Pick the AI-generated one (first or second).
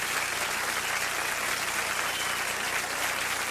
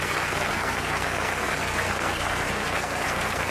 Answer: second